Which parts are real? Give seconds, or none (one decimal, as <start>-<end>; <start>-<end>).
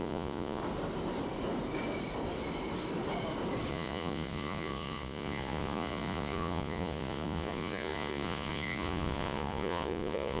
0.6-3.7